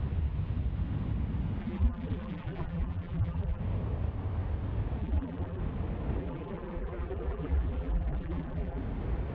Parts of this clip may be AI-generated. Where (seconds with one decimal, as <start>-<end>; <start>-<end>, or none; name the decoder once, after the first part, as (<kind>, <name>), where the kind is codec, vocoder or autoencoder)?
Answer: 1.6-3.6 (vocoder, BigVGAN v2); 5.0-5.6; 6.2-8.8